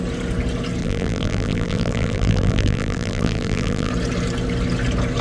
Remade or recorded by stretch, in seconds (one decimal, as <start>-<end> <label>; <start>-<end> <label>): 0.0-0.8 recorded; 0.8-3.9 remade; 3.9-5.2 recorded